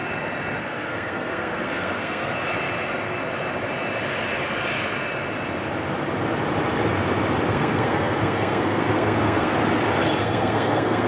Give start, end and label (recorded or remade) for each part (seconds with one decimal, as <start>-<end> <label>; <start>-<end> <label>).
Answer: 0.0-0.6 recorded; 0.6-2.3 remade; 2.3-7.5 recorded; 7.5-9.5 remade; 9.5-10.2 recorded; 10.2-11.1 remade